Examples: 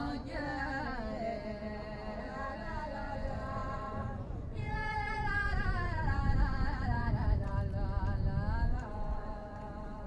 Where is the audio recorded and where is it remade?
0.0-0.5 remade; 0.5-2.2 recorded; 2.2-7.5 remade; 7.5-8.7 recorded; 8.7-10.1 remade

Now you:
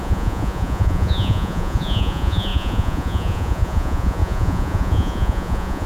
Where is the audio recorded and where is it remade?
0.0-5.9 remade

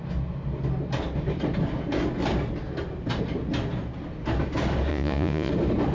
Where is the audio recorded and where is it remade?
0.0-4.9 recorded; 4.9-5.5 remade; 5.5-5.9 recorded

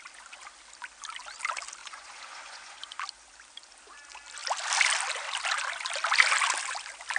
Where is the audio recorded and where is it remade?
0.0-1.8 recorded; 1.8-3.0 remade; 3.0-7.2 recorded